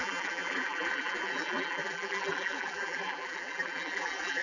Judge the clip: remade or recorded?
remade